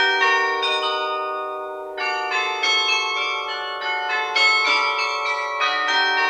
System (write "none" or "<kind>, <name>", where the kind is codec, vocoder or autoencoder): none